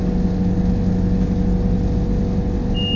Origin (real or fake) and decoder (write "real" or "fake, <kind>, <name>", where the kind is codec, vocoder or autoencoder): real